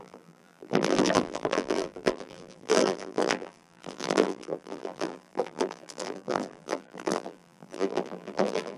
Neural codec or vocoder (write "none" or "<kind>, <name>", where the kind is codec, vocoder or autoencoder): vocoder, BigVGAN v2